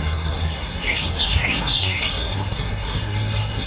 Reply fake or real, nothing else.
fake